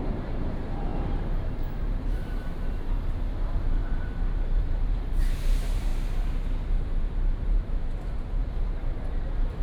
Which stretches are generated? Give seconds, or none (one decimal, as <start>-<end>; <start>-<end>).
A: 0.0-5.9; 6.7-9.6